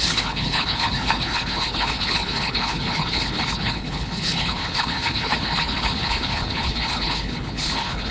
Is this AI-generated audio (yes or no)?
yes